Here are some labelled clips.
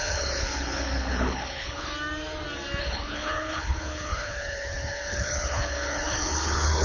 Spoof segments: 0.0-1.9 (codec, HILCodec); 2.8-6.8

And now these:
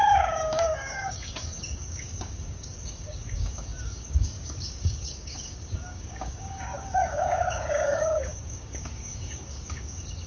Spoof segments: 0.0-10.3 (codec, DAC)